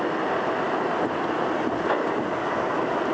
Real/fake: real